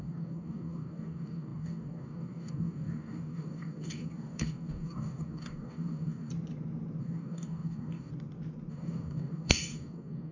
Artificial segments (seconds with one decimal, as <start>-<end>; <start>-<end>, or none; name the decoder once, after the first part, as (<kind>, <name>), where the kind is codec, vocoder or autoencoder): 0.0-6.3 (codec, DAC); 7.0-8.1; 8.7-10.3